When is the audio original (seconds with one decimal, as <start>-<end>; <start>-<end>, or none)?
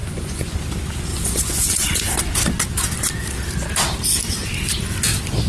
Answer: 0.6-1.1; 2.2-5.5